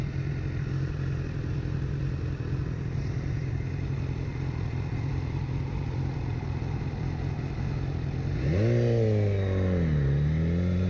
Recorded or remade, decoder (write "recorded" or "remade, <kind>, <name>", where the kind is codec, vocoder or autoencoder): recorded